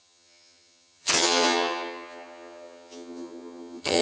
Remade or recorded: remade